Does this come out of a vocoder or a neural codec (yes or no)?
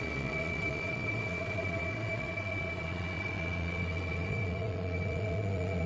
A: yes